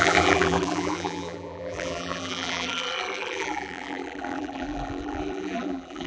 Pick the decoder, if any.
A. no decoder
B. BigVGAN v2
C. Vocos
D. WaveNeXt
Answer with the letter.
B